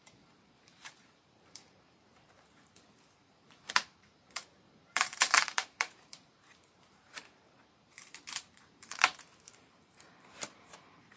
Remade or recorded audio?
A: remade